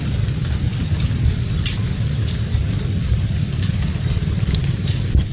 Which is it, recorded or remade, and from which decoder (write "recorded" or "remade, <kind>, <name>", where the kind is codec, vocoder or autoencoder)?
recorded